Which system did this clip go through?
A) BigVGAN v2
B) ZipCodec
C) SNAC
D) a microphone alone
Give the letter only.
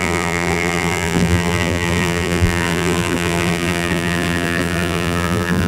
A